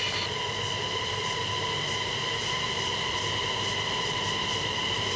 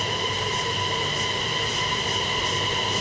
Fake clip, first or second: first